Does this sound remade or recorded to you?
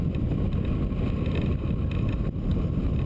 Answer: recorded